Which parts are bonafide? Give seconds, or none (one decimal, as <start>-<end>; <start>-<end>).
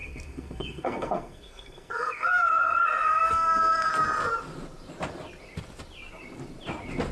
3.9-7.1